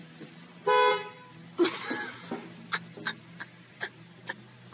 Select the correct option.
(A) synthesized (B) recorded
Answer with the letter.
B